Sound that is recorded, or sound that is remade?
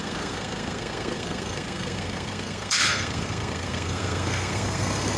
remade